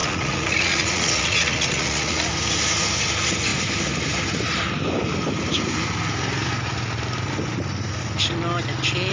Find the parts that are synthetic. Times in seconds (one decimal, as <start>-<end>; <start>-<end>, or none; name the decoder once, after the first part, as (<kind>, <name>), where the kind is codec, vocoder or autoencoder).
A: 0.0-2.3 (vocoder, Vocos)

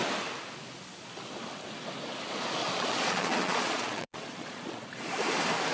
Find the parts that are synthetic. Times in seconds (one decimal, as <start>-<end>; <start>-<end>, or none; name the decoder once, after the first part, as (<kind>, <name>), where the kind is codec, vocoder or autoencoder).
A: 2.6-4.9 (vocoder, Vocos)

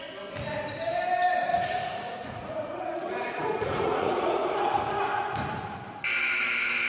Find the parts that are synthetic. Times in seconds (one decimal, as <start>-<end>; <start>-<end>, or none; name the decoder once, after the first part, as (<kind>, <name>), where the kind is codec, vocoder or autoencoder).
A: 1.5-5.6 (vocoder, Vocos)

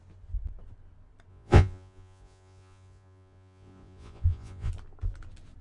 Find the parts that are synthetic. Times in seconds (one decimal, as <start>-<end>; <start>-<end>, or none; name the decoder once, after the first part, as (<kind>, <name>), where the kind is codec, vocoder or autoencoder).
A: 1.3-4.7 (vocoder, Vocos)